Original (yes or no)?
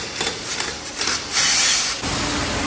yes